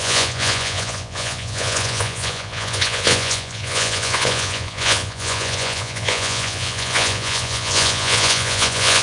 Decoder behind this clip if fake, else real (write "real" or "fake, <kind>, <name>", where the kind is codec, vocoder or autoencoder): fake, vocoder, Vocos